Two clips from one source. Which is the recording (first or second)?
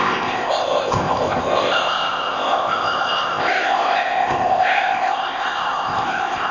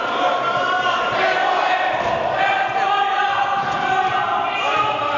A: second